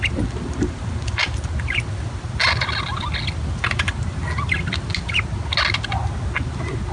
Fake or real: real